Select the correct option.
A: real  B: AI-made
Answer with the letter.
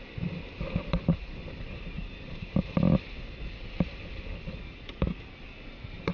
A